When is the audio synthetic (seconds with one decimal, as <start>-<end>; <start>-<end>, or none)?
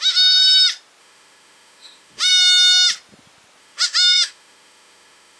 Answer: 0.0-0.4; 1.0-2.3; 3.6-5.4